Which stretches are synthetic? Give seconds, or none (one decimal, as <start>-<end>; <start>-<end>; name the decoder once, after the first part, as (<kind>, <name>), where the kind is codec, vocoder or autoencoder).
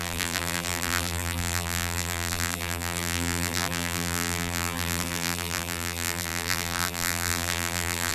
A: 0.0-8.1 (vocoder, BigVGAN v2)